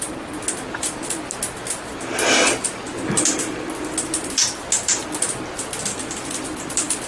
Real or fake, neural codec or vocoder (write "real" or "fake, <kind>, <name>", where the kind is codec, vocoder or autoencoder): real